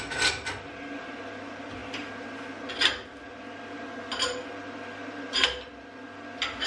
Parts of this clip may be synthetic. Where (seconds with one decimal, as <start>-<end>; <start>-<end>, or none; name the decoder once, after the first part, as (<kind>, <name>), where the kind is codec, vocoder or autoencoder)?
none